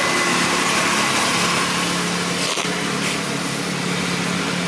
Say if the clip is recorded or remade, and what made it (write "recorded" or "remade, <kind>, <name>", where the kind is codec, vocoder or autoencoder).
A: recorded